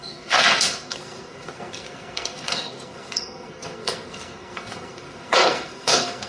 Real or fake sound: fake